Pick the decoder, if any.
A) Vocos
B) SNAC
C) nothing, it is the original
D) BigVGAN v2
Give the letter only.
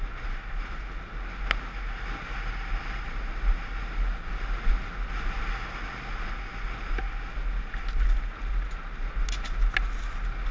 C